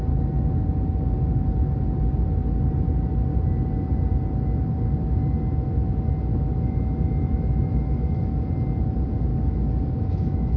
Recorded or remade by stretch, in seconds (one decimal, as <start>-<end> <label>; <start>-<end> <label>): 0.0-6.3 recorded; 6.3-8.5 remade; 8.5-9.3 recorded; 9.3-10.6 remade